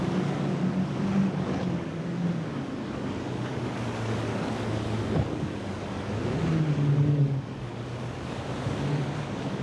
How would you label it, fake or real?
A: fake